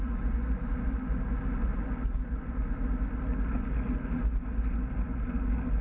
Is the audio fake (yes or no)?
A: no